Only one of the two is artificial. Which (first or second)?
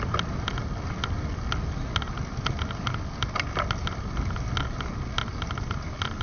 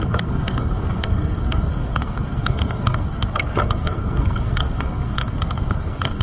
second